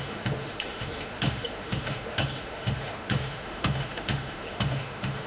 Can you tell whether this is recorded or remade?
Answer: remade